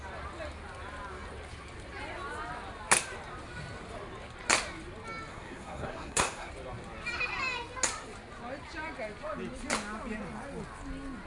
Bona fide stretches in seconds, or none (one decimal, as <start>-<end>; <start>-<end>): 0.0-5.3; 6.5-11.3